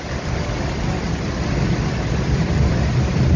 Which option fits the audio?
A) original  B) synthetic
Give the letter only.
A